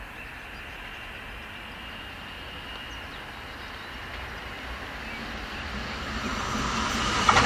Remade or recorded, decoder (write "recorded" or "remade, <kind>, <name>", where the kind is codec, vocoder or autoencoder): recorded